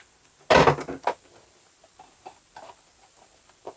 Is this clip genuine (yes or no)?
yes